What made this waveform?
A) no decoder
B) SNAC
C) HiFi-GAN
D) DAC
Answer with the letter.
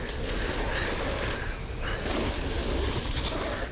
A